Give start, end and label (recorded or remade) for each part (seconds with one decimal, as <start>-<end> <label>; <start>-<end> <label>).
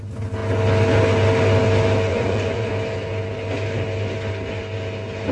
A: 0.0-2.1 recorded; 2.1-2.7 remade; 2.7-5.3 recorded